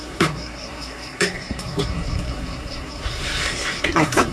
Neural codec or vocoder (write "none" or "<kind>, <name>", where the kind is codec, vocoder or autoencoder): codec, SNAC